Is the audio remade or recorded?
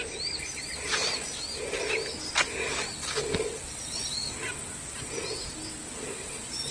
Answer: recorded